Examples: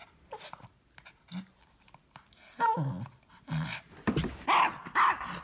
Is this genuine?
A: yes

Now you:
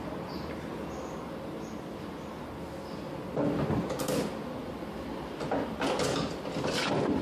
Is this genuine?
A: yes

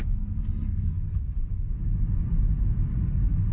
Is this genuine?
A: yes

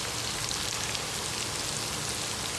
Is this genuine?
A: yes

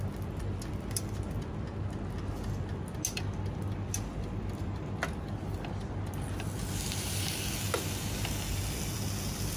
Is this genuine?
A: yes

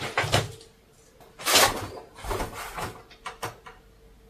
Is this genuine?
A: yes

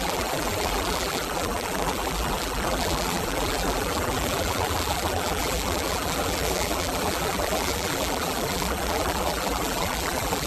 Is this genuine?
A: no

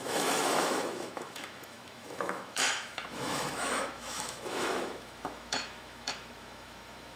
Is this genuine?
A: no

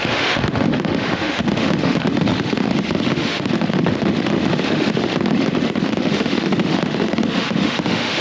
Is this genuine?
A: no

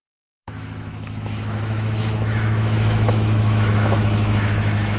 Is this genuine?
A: no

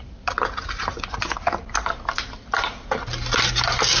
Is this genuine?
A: yes